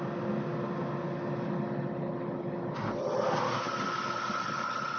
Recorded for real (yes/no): yes